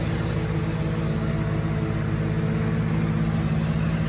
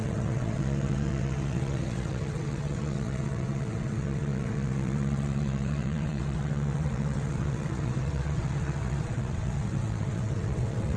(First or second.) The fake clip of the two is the second